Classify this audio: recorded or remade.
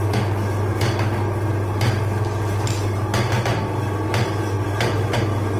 recorded